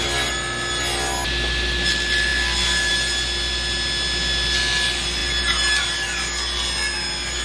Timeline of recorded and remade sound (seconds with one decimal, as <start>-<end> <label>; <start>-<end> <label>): 0.0-7.4 recorded